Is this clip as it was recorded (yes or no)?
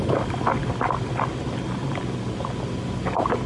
yes